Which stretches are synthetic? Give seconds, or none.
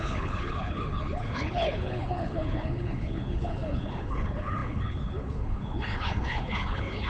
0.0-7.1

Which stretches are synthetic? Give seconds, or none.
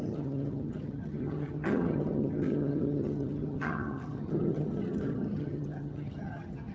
0.0-6.7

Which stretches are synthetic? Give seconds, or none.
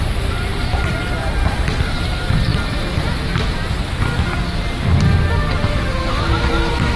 none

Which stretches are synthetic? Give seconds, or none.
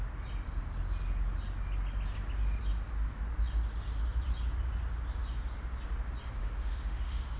6.4-7.4